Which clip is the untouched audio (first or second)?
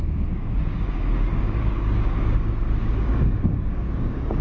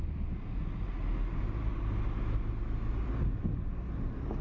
second